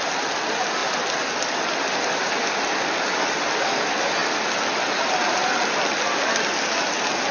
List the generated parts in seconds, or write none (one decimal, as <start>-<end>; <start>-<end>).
none